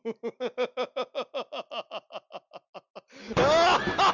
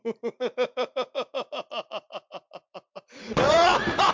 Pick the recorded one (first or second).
first